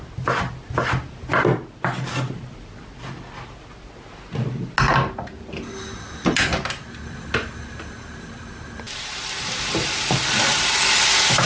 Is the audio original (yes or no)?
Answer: yes